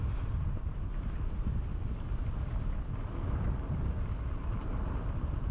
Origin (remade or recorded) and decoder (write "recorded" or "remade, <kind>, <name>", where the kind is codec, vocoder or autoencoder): remade, vocoder, BigVGAN v2